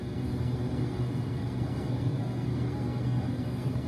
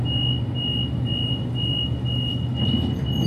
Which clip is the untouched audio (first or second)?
second